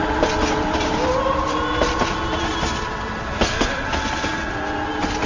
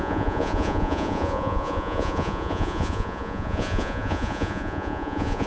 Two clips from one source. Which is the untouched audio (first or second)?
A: first